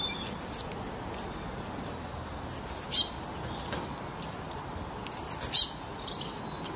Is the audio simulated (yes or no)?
no